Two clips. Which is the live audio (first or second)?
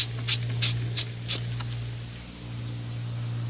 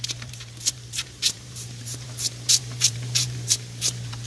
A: first